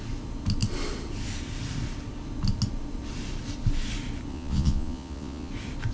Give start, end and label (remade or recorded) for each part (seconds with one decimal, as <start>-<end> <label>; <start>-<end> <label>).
0.0-4.3 recorded; 4.3-5.5 remade; 5.5-5.9 recorded